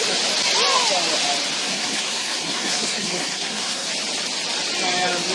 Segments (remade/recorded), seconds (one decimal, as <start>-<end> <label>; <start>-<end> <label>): 0.0-1.6 recorded; 1.6-3.9 remade; 3.9-5.3 recorded